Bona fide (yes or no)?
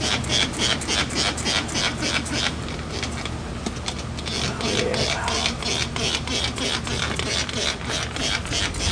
yes